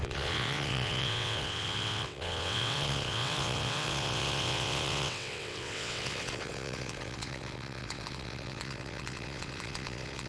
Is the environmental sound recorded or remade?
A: remade